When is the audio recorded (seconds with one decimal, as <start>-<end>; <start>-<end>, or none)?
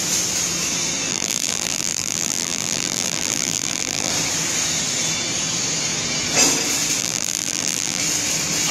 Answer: 0.0-1.1; 4.1-7.0; 8.0-8.7